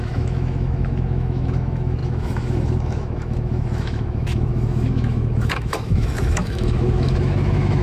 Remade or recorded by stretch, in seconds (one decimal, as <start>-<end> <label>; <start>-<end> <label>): 0.0-7.8 remade

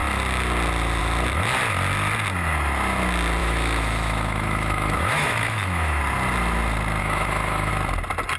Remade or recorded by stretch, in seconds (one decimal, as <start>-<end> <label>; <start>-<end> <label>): 0.0-3.4 recorded; 3.4-6.0 remade; 6.0-7.0 recorded; 7.0-7.7 remade; 7.7-8.4 recorded